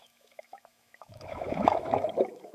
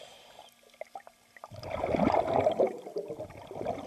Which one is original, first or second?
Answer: second